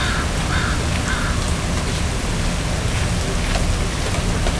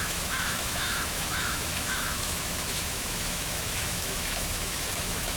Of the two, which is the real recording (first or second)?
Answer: first